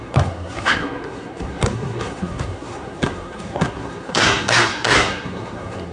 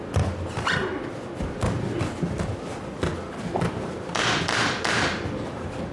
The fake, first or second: first